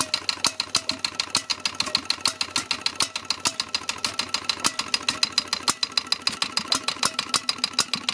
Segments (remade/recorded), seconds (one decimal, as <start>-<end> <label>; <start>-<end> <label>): 0.0-8.1 recorded